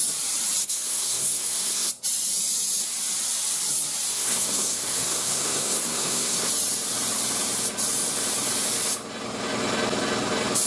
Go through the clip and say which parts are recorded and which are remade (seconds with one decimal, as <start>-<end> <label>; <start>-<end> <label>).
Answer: 0.0-0.6 recorded; 0.6-1.9 remade; 1.9-4.1 recorded; 4.1-6.5 remade; 6.5-10.7 recorded